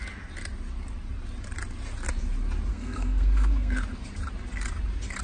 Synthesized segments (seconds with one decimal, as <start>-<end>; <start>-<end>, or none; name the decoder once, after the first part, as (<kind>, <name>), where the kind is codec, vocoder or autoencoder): 2.7-3.8 (codec, SNAC)